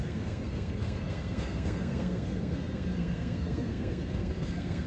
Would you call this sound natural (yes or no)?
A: no